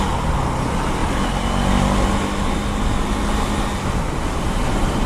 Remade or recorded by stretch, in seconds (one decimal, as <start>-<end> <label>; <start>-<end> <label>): 0.0-5.1 recorded